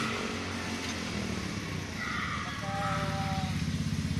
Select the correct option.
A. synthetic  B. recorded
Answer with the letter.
B